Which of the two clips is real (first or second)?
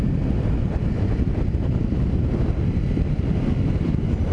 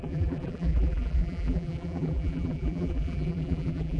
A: first